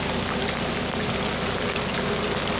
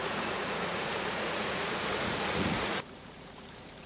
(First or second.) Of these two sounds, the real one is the first